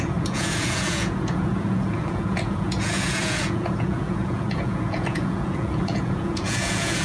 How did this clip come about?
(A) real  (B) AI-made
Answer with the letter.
B